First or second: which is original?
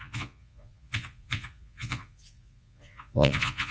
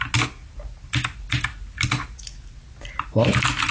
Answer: second